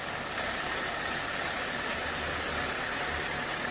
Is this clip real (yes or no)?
yes